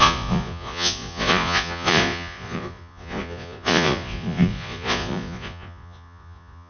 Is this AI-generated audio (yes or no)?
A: yes